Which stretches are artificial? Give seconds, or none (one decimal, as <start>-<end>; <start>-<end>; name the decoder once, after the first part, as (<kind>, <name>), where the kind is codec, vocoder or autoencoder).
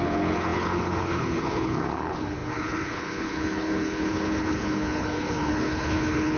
0.0-6.4 (codec, HILCodec)